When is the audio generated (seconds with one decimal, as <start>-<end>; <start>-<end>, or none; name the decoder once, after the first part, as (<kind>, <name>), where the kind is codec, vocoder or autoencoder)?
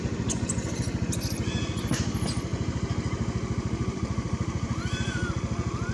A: 2.5-5.3 (vocoder, BigVGAN v2)